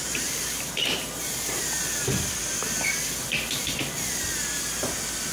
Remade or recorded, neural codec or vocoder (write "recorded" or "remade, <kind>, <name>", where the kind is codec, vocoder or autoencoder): recorded